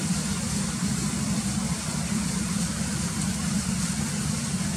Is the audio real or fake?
real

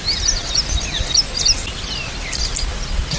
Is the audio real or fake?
real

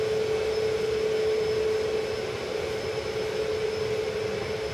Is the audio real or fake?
real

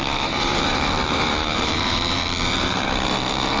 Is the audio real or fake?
fake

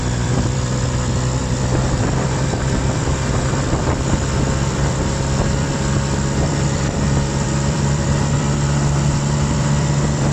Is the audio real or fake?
fake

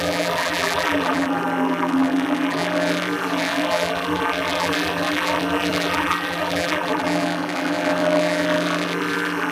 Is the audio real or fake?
fake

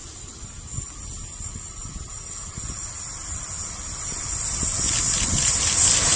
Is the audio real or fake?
real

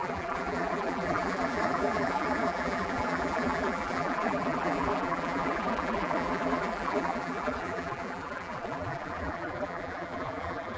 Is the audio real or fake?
fake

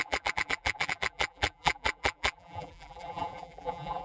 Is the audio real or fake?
fake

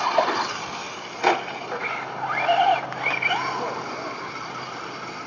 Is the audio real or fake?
real